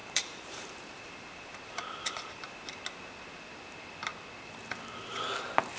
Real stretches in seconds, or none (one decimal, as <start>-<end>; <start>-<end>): 2.5-5.8

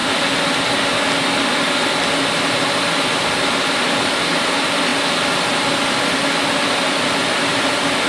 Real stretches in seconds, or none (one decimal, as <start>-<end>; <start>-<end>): 0.0-7.2

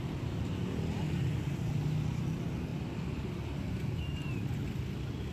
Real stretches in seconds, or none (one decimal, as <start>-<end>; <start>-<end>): 0.0-2.7; 4.0-5.3

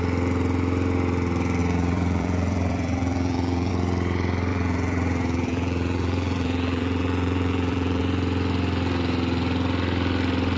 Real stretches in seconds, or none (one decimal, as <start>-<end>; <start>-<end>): 0.0-1.6; 3.7-4.5; 8.0-10.6

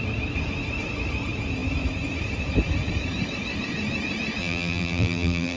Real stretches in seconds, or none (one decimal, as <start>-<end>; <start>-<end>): 0.0-4.4